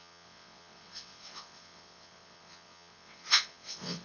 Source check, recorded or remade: remade